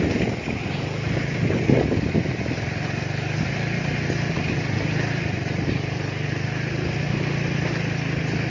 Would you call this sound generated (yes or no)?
no